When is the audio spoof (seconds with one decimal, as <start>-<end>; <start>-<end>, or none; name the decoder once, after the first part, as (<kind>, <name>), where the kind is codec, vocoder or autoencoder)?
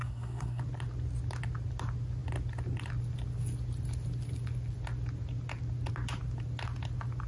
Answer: 0.0-0.6 (codec, SNAC)